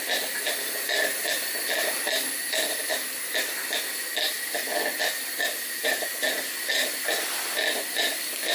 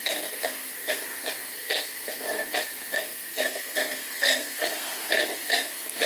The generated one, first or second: second